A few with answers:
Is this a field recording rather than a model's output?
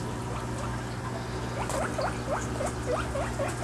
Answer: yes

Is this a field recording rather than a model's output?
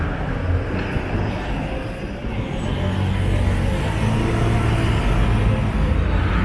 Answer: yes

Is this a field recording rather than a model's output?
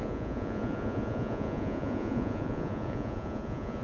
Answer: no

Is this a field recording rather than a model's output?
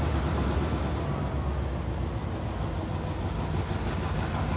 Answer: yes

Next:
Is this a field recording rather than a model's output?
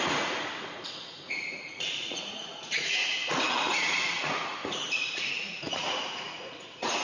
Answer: no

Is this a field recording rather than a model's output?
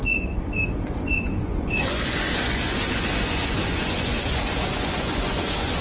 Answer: no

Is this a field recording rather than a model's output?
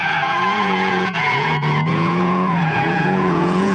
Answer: no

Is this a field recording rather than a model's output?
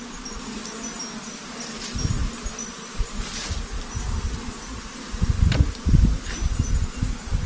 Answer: yes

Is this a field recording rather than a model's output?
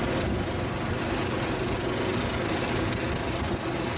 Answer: yes